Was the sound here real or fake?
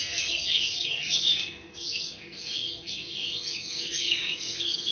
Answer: fake